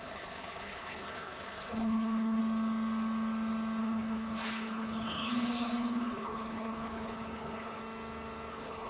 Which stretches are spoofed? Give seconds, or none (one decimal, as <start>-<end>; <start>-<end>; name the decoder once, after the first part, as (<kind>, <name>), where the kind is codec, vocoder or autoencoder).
0.0-2.4 (codec, HILCodec); 3.8-7.8; 8.5-8.9